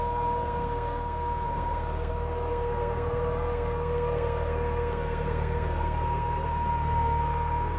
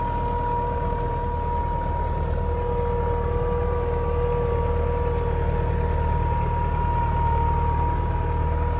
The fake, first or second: first